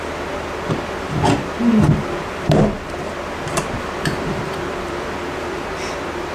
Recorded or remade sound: recorded